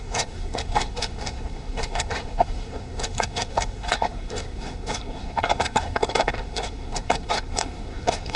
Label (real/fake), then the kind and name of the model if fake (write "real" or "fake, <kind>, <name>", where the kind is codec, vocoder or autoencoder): fake, codec, SNAC